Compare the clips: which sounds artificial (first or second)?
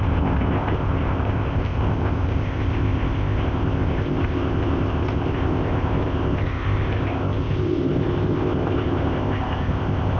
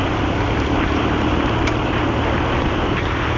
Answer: first